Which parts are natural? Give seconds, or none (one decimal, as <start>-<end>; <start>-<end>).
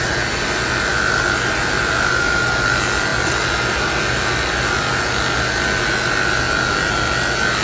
0.0-7.6